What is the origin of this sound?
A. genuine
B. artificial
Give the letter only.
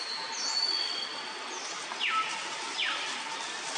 A